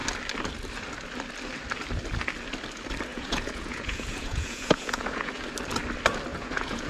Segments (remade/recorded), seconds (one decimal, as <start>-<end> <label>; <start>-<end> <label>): 0.0-3.1 recorded; 3.1-5.4 remade; 5.4-6.3 recorded; 6.3-6.9 remade